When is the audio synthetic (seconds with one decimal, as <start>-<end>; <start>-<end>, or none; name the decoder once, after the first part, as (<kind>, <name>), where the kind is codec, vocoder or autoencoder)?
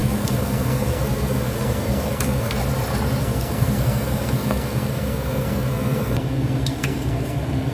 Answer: 0.0-2.6 (codec, SNAC); 3.2-7.7